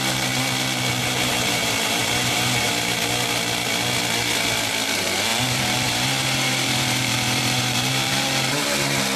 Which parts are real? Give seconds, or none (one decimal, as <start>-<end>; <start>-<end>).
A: 0.0-1.0; 2.7-5.3; 8.1-9.2